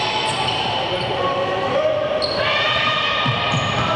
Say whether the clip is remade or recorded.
recorded